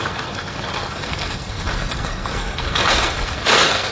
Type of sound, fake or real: fake